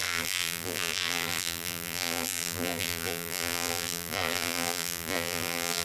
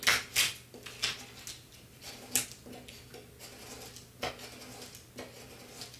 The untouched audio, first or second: second